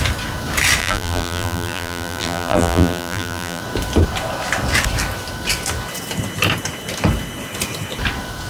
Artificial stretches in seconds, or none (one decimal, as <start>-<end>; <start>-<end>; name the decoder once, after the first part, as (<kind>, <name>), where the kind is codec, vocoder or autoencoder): 0.8-3.6 (vocoder, BigVGAN v2)